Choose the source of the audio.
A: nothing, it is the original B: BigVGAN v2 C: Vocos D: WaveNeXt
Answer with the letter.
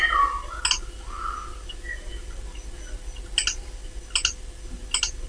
A